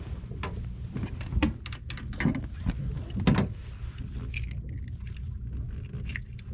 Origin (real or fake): real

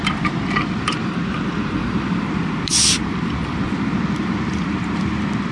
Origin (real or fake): fake